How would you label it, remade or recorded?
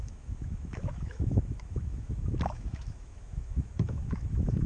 remade